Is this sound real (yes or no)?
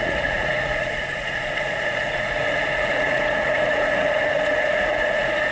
no